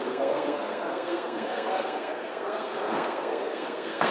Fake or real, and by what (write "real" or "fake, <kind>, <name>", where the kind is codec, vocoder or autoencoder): fake, codec, SNAC